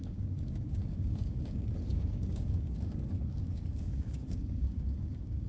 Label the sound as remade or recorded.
remade